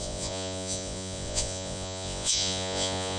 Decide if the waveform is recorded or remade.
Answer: remade